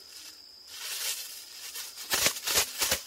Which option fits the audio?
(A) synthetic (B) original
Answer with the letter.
B